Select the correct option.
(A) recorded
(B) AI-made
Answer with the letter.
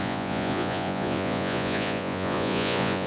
B